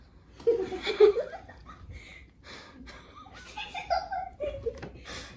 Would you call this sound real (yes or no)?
yes